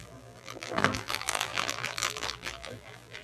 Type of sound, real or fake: fake